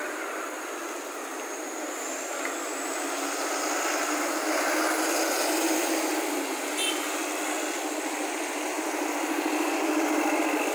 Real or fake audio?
real